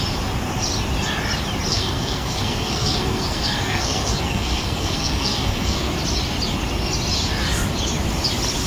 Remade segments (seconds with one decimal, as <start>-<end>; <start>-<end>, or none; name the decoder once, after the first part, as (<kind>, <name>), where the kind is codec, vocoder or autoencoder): 1.7-5.9 (codec, SNAC)